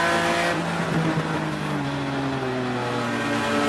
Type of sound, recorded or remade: recorded